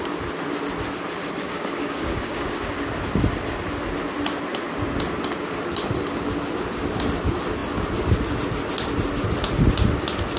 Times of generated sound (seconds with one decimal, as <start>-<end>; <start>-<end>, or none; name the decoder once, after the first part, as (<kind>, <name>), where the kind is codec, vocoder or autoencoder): 1.2-2.6 (codec, DAC)